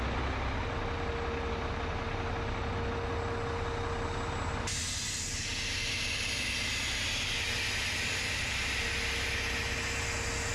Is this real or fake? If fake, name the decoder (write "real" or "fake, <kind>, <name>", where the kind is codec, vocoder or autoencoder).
real